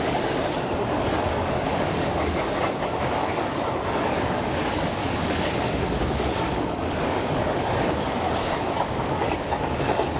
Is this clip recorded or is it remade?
remade